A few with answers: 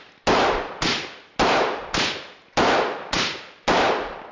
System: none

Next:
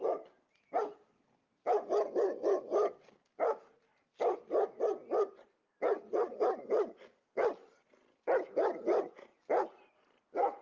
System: none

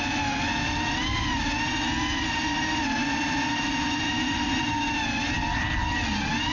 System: none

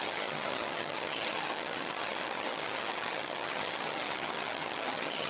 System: vocoder, HiFi-GAN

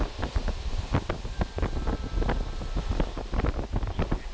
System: none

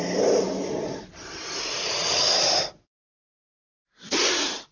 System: none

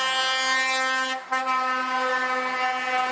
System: none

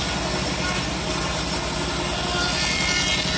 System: none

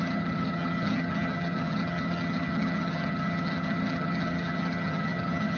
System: vocoder, HiFi-GAN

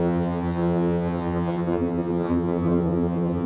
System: vocoder, HiFi-GAN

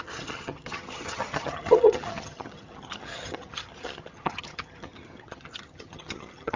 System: vocoder, HiFi-GAN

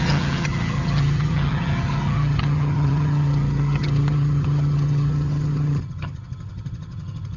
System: vocoder, HiFi-GAN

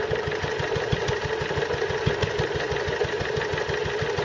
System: none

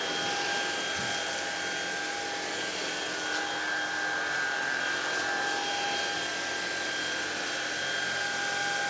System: none